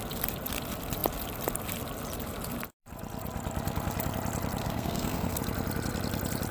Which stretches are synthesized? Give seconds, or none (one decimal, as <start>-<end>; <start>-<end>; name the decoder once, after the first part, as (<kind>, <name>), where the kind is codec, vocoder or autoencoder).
4.6-5.4 (codec, SNAC)